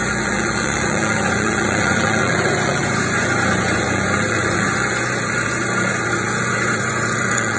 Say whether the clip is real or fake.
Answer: fake